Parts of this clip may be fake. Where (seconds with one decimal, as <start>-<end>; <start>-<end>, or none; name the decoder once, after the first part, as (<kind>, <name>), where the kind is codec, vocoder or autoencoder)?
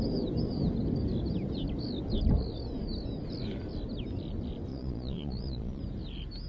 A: 4.7-5.8 (vocoder, Vocos)